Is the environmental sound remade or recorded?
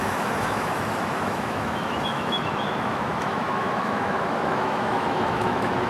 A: remade